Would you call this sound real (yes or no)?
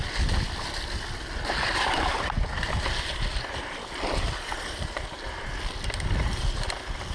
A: yes